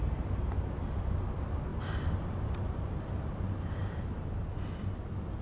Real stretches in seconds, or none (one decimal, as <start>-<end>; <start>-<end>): 0.0-1.7; 2.8-3.8; 4.4-5.4

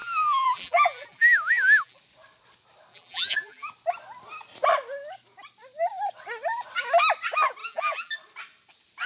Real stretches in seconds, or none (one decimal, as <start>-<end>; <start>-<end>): 2.0-2.9; 3.7-7.6; 8.1-9.1

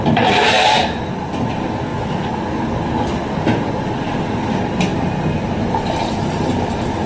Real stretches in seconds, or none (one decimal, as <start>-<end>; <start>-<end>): 1.9-3.8; 4.9-6.1

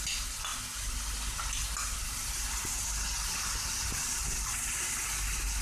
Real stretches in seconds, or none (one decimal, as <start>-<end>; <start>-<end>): 0.0-5.6

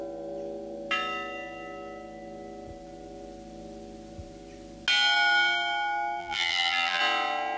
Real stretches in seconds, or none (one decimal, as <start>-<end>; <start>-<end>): 0.0-6.2; 7.0-7.6

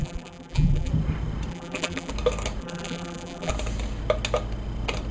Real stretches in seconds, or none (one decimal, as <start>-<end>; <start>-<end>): 0.9-1.5; 2.1-2.6; 3.5-5.1